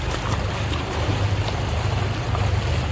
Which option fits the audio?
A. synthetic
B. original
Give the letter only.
B